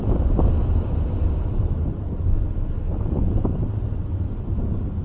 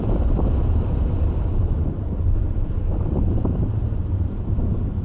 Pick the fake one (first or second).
second